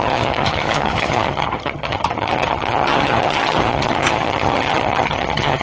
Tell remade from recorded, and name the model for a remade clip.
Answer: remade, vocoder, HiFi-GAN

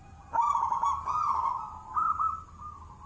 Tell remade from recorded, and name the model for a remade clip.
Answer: recorded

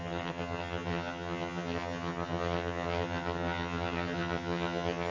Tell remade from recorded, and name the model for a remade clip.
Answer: remade, vocoder, HiFi-GAN